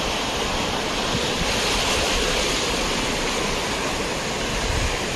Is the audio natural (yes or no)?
yes